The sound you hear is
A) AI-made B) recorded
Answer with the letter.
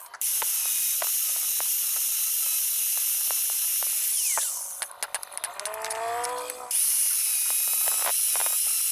B